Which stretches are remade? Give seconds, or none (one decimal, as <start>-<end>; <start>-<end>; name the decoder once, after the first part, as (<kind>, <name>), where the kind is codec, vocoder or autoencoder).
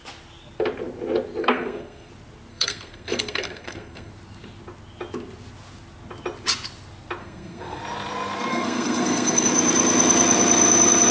1.4-2.1 (codec, SNAC); 2.5-4.1; 7.2-7.8; 8.5-9.5